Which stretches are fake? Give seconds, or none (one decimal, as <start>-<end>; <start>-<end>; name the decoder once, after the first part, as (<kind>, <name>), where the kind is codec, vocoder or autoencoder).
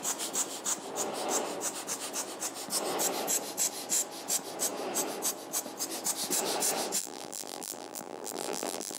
7.0-9.0 (vocoder, BigVGAN v2)